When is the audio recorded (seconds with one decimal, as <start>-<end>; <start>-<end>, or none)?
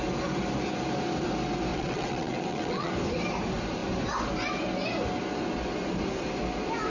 0.0-1.7; 2.9-6.9